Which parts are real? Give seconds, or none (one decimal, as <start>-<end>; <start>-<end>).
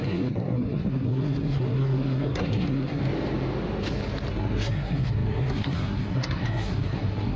3.0-4.3